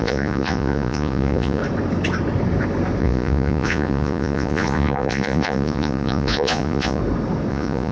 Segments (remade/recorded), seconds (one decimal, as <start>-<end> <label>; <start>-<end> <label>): 0.0-1.6 remade; 1.6-3.0 recorded; 3.0-7.0 remade; 7.0-7.5 recorded; 7.5-7.9 remade